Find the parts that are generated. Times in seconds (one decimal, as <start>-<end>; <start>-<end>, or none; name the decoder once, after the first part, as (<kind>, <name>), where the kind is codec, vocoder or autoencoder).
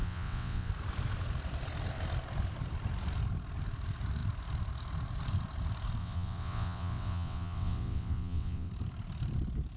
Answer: 0.0-0.7 (vocoder, WaveNeXt); 6.0-8.7